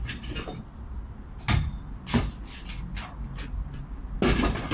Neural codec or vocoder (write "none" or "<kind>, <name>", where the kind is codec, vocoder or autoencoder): none